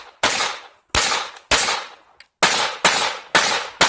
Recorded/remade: recorded